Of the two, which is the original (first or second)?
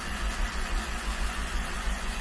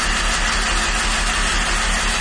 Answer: second